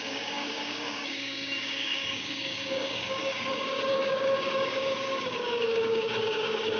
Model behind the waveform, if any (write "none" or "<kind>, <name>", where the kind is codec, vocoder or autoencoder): codec, DAC